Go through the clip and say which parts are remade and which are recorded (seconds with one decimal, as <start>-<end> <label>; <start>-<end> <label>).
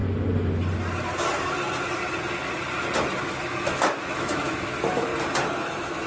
0.0-3.2 recorded; 3.2-5.1 remade; 5.1-5.6 recorded; 5.6-6.1 remade